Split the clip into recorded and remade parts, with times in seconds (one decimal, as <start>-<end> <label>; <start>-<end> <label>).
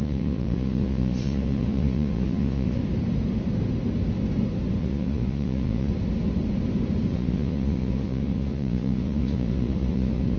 0.0-2.8 remade; 2.8-4.8 recorded; 4.8-5.9 remade; 5.9-7.1 recorded; 7.1-10.4 remade